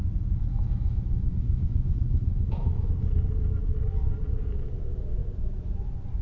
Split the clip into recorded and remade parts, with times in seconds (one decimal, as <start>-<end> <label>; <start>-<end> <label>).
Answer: 0.0-0.5 recorded; 0.5-2.9 remade; 2.9-6.2 recorded